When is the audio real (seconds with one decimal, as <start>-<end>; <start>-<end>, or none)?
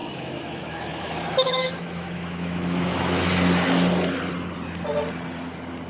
3.3-5.9